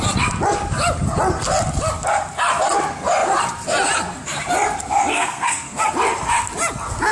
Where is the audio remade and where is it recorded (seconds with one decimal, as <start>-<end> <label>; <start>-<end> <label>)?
0.0-5.1 recorded; 5.1-5.8 remade; 5.8-7.1 recorded